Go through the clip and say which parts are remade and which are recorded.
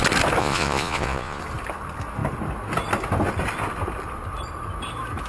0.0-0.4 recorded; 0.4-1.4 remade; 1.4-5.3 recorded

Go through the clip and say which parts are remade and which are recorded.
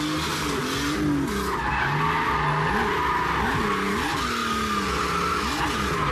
0.0-6.1 recorded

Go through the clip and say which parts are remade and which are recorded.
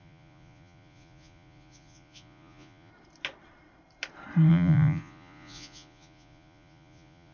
0.0-2.9 remade; 2.9-4.5 recorded; 4.5-7.3 remade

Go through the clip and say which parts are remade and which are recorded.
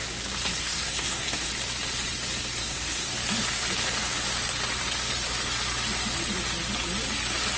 0.0-0.6 recorded; 0.6-1.5 remade; 1.5-2.6 recorded; 2.6-3.1 remade; 3.1-7.6 recorded